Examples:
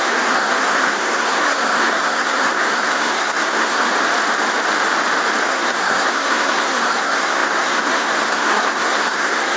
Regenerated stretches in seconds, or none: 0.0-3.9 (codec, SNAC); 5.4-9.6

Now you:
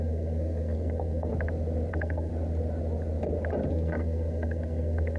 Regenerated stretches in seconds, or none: 0.0-1.3 (codec, SNAC); 1.9-2.3; 3.7-5.2

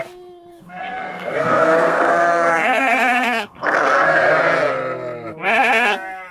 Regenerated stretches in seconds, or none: 0.5-4.3 (codec, SNAC)

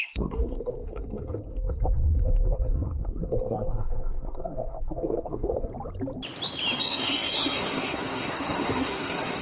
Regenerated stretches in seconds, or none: 0.0-5.7 (codec, SNAC); 6.8-9.4

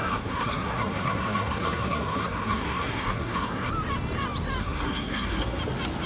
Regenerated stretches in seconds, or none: 0.0-3.7 (codec, SNAC); 4.6-5.6

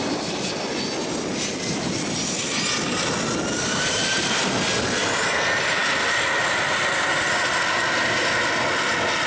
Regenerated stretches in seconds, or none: none